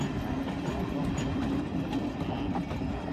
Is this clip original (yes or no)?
yes